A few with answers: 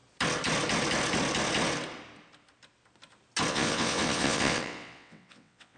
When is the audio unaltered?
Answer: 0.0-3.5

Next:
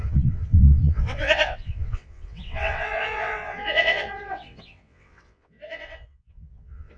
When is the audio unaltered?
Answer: none

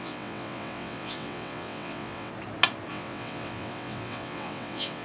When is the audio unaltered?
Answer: 2.3-2.9

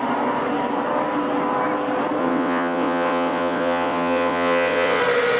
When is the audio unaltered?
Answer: 0.0-2.2; 5.0-5.4